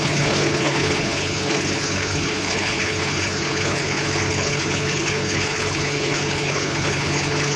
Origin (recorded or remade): remade